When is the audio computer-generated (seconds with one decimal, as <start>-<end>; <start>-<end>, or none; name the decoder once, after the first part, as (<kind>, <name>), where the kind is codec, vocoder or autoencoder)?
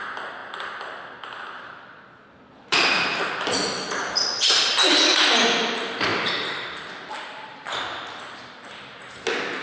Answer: none